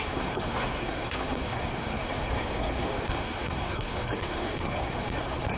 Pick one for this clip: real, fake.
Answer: fake